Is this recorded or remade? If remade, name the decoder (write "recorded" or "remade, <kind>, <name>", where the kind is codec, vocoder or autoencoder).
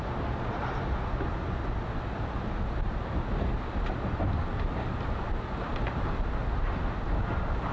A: recorded